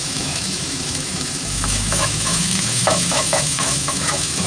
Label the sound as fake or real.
fake